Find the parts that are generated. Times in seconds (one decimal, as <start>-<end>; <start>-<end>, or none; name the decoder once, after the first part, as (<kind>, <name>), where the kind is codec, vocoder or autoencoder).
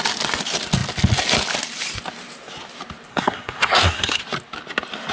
3.1-4.2 (codec, SNAC)